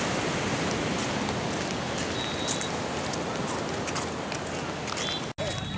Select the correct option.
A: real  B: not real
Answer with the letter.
A